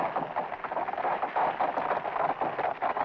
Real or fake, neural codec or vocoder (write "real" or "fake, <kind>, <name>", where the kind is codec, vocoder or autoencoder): real